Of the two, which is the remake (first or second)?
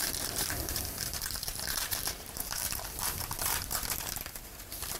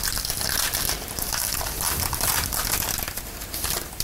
first